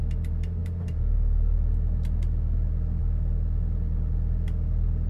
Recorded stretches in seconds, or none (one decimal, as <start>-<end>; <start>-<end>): 0.0-5.1